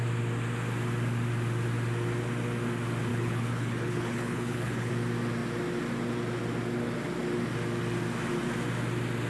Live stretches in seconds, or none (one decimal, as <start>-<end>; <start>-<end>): 0.0-3.1; 4.9-9.3